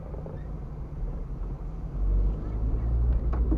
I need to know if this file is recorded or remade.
recorded